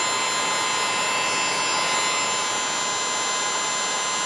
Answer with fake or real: real